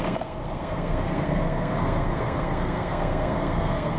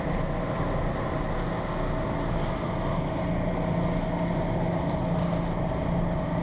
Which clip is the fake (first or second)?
first